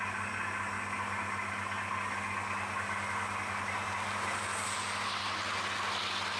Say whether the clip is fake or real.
real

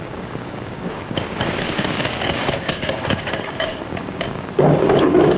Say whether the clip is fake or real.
fake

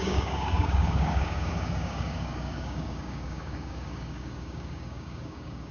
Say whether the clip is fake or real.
fake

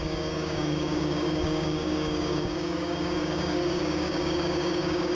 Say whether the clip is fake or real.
fake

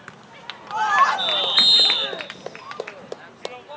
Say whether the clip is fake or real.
real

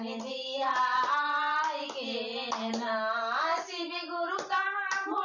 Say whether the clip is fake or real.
real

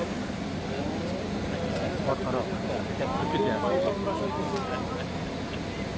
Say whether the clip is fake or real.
real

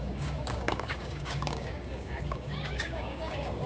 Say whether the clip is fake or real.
fake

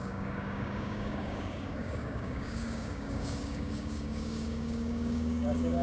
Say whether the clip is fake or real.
fake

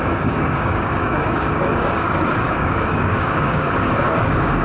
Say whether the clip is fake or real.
fake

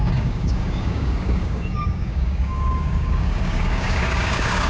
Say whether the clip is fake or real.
fake